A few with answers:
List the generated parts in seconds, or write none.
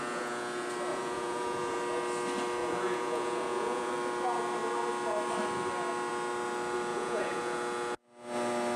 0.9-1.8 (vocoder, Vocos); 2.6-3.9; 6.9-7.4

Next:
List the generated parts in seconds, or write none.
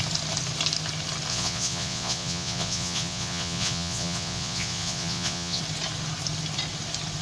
1.3-5.6 (vocoder, Vocos)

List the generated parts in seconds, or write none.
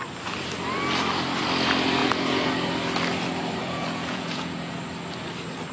2.0-2.5 (vocoder, Vocos); 3.6-4.7